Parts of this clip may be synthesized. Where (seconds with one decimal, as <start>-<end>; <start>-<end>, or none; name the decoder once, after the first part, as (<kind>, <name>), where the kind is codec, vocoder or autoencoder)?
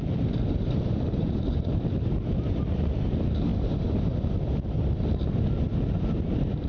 0.0-3.5 (vocoder, BigVGAN v2)